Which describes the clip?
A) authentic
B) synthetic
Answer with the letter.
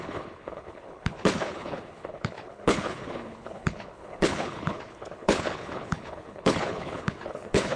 B